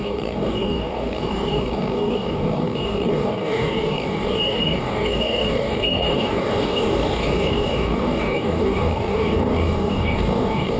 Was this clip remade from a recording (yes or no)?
yes